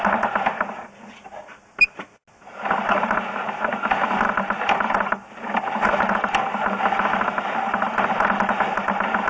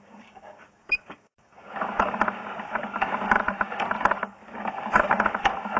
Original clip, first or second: first